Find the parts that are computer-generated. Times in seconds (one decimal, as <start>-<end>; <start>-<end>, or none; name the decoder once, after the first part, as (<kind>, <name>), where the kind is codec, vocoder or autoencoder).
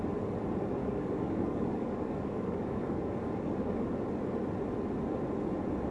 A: 0.8-3.9 (codec, DAC)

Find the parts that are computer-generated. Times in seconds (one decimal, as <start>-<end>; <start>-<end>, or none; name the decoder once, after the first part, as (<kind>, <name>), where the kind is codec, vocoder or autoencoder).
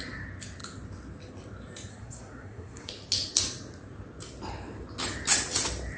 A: 1.9-2.9 (codec, SNAC)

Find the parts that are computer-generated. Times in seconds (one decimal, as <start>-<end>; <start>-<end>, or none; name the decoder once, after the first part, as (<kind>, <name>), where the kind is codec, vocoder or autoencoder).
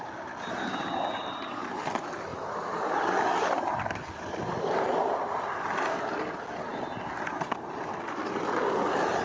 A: none